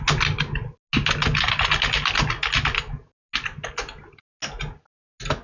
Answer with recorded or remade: recorded